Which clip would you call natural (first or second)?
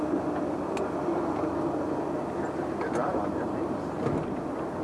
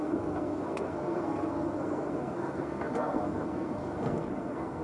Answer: first